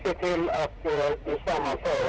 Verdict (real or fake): fake